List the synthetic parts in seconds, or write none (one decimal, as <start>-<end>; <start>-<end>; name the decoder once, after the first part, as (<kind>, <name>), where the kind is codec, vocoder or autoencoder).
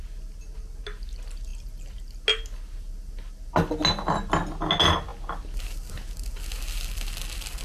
none